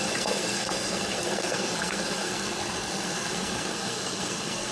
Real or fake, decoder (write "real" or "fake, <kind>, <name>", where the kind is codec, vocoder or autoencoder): fake, codec, SNAC